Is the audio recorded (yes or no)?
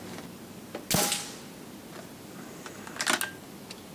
yes